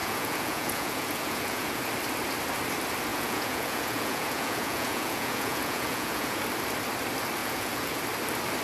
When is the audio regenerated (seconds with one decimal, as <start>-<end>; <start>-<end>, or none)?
0.0-1.8; 3.1-6.4; 7.4-8.0